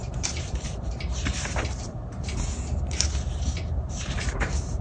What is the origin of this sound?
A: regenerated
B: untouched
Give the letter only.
A